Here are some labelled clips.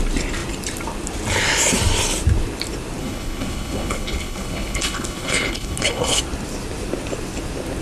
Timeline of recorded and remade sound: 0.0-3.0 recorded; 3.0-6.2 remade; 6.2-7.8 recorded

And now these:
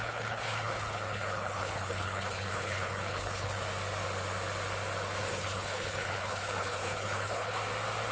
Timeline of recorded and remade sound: 0.0-3.6 remade; 3.6-5.3 recorded; 5.3-7.6 remade; 7.6-8.1 recorded

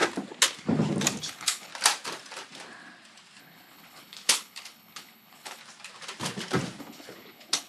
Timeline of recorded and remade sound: 0.0-1.2 recorded; 1.2-1.7 remade; 1.7-3.4 recorded; 3.4-5.6 remade; 5.6-6.8 recorded; 6.8-7.7 remade